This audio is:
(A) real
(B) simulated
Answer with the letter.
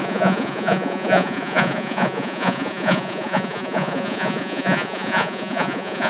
B